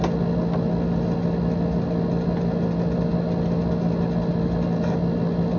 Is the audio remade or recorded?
recorded